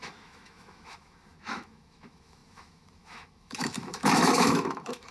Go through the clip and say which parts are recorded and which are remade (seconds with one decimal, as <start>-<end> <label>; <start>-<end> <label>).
0.0-5.1 remade